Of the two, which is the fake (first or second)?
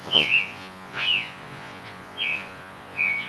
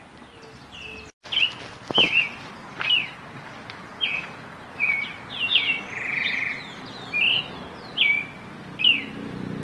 first